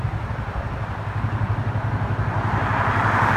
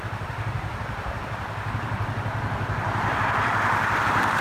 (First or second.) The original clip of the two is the first